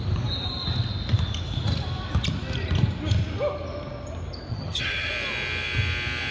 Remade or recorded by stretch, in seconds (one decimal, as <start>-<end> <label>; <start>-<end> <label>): 0.0-4.5 recorded; 4.5-5.1 remade; 5.1-6.3 recorded